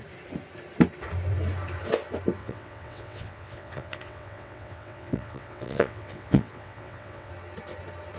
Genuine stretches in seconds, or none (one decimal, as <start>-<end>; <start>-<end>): 0.0-2.4; 7.3-8.2